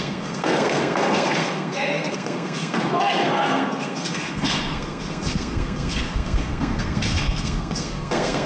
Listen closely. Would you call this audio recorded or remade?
remade